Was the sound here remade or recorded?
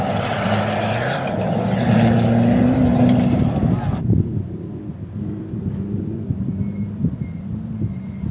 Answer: recorded